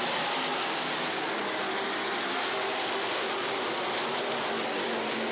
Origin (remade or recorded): recorded